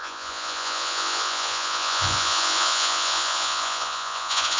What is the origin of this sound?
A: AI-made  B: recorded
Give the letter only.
A